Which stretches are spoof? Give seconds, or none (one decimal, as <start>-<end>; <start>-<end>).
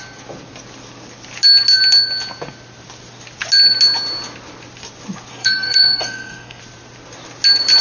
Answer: 5.3-6.6